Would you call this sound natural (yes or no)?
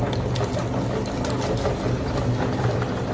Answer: yes